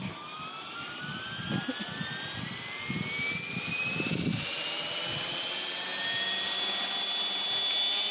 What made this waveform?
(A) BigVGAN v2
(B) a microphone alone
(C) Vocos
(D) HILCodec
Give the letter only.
B